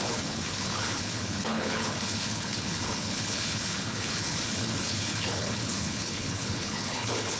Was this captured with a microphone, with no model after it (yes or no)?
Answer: no